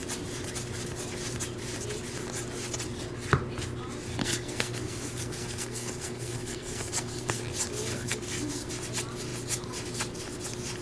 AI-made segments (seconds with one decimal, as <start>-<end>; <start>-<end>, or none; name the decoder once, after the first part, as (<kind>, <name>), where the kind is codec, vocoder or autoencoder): 4.2-7.4 (codec, SNAC); 7.9-8.7